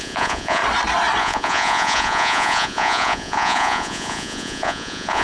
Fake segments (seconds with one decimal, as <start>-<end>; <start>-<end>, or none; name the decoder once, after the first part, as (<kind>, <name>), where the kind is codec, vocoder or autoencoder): 0.0-0.6 (vocoder, Vocos); 1.2-5.2